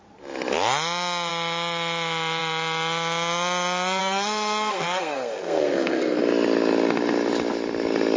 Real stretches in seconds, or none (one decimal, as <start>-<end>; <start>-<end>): 0.0-4.0; 6.2-8.2